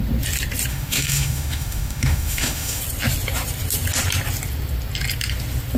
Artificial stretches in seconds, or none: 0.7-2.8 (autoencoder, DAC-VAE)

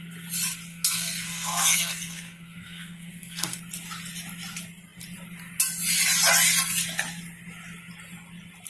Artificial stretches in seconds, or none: 0.7-3.6 (codec, SNAC)

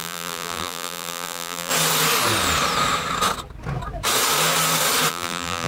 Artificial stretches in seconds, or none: 0.0-1.7 (vocoder, BigVGAN v2); 5.1-5.7

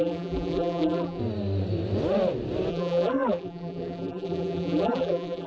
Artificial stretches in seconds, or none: 0.0-1.2 (vocoder, BigVGAN v2); 2.7-5.5

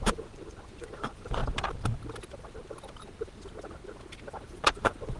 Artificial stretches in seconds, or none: 0.0-1.4 (vocoder, Vocos); 4.5-5.2

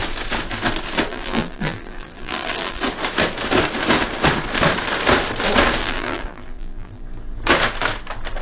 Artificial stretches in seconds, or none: 1.1-2.8 (vocoder, BigVGAN v2); 5.8-7.0

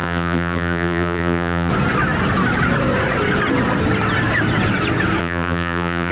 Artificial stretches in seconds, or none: 0.0-1.7 (vocoder, BigVGAN v2); 5.2-6.1